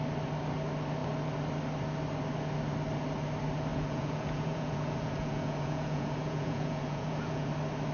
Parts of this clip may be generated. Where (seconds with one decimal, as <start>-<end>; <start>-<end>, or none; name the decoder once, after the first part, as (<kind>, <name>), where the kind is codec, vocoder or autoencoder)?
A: 3.7-7.5 (vocoder, Vocos)